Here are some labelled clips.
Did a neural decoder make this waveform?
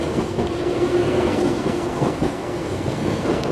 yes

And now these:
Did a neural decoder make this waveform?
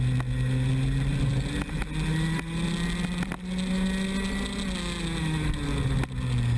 no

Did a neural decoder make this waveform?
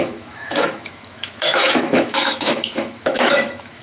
yes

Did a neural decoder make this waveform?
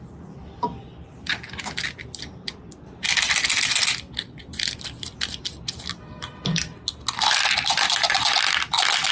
no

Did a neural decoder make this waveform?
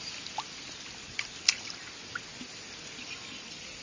no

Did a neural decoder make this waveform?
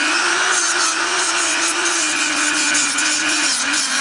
yes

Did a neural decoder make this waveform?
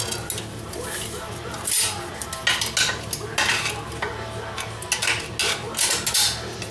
no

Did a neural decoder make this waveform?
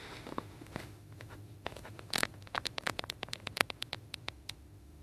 yes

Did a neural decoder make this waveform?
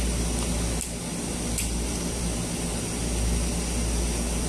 no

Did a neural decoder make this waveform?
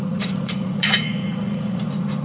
yes